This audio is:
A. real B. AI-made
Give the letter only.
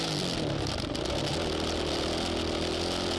A